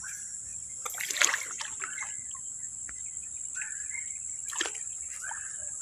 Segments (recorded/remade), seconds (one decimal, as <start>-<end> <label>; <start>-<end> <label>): 0.0-5.8 recorded